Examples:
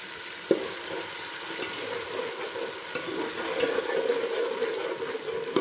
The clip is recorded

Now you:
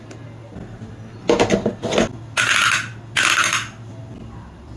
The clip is recorded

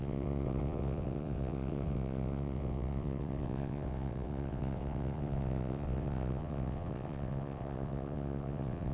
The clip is remade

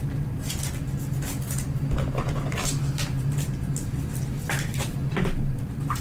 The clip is recorded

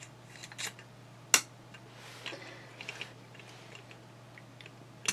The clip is recorded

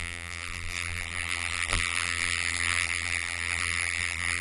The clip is remade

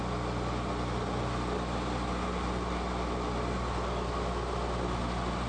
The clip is recorded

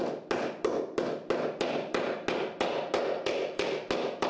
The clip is recorded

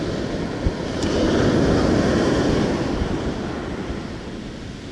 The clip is recorded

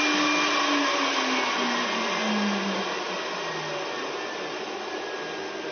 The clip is recorded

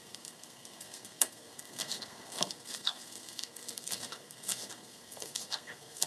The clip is remade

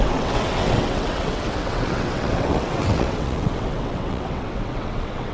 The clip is remade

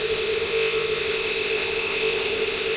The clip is remade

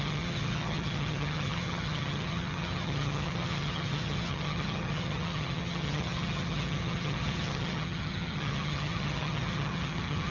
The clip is remade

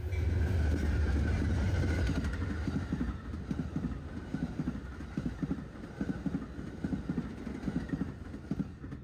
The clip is recorded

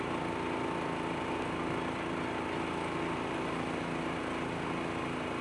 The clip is recorded